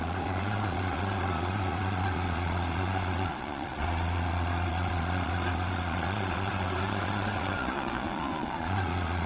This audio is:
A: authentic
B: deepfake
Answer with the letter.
B